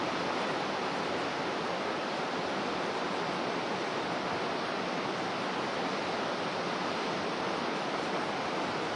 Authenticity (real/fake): real